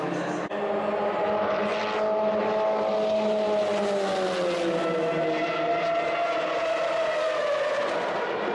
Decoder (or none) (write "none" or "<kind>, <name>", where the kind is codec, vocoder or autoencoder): none